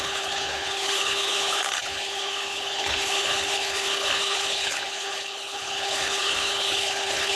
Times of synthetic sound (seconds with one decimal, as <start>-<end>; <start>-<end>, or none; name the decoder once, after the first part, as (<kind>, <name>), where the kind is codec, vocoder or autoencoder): 0.0-7.4 (codec, HILCodec)

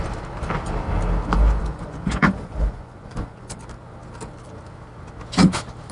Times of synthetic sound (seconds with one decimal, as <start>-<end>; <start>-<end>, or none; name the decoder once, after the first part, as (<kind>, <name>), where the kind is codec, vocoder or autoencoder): 1.6-3.6 (vocoder, Vocos)

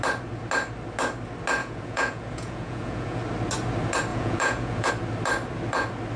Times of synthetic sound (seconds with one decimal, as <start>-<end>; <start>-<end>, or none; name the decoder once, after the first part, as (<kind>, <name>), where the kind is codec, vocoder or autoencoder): 1.6-3.2 (vocoder, Vocos); 4.1-4.9

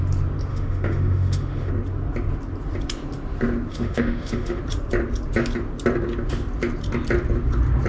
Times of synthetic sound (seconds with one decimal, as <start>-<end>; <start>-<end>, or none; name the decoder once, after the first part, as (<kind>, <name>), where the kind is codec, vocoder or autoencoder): 0.5-1.7 (autoencoder, DAC-VAE); 3.7-4.6